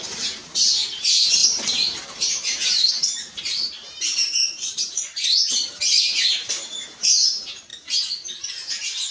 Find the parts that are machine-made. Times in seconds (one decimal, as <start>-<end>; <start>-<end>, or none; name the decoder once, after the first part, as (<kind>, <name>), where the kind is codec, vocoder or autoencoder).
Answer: 0.0-9.1 (vocoder, BigVGAN v2)